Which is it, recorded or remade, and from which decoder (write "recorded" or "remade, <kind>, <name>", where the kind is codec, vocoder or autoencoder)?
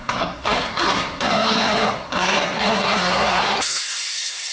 remade, codec, SNAC